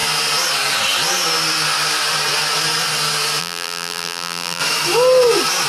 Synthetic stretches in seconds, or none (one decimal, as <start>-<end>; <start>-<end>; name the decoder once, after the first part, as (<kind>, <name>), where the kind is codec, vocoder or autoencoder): 3.4-4.6 (vocoder, BigVGAN v2)